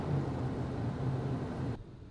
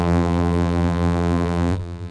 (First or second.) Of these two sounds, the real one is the first